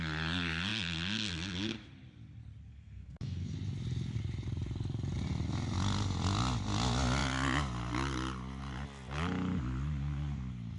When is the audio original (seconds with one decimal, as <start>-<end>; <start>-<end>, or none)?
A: 0.0-2.7; 3.5-10.8